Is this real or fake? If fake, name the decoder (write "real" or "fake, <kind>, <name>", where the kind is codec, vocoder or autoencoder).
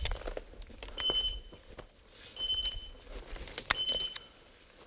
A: real